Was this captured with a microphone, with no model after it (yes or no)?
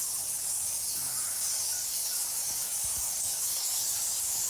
no